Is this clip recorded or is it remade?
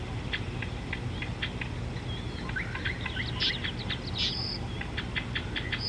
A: recorded